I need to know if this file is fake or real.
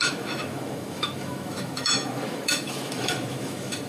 fake